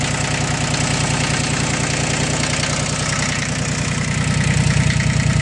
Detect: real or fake real